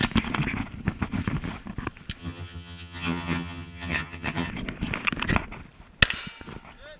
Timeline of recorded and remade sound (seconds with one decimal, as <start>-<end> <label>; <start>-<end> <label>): 0.0-2.2 recorded; 2.2-4.5 remade; 4.5-7.0 recorded

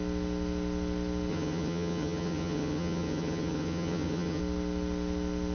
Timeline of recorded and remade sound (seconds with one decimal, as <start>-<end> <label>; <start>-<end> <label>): 0.0-1.3 recorded; 1.3-4.4 remade; 4.4-5.5 recorded

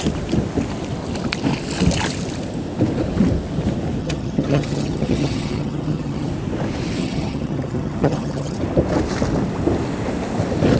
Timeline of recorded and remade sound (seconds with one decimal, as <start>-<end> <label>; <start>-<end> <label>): 0.0-4.0 recorded; 4.0-6.3 remade; 6.3-7.0 recorded; 7.0-8.6 remade; 8.6-10.8 recorded

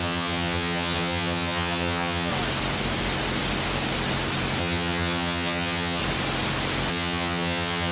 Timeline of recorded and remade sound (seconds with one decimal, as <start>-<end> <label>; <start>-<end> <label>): 0.0-2.3 remade; 2.3-4.6 recorded; 4.6-6.0 remade; 6.0-6.9 recorded; 6.9-7.9 remade

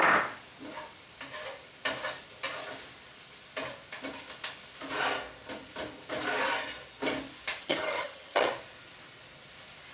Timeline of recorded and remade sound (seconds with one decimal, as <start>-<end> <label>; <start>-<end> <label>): 0.0-7.6 recorded; 7.6-8.5 remade; 8.5-9.9 recorded